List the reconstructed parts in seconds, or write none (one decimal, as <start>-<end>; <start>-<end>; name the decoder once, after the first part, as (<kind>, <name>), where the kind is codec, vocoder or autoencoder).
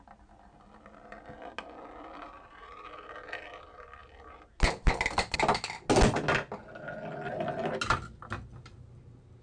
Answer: none